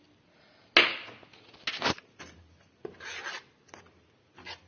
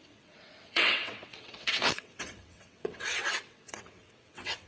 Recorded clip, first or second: first